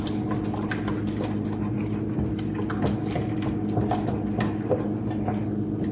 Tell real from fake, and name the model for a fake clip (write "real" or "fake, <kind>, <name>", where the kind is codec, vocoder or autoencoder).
real